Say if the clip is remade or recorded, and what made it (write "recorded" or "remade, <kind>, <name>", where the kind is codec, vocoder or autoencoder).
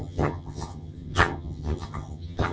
remade, vocoder, HiFi-GAN